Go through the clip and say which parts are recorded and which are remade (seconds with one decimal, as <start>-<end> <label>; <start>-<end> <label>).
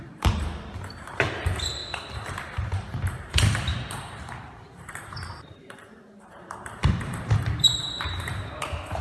0.0-9.0 remade